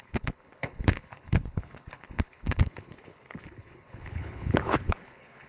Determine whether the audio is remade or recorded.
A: remade